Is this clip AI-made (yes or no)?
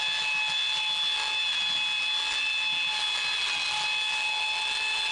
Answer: no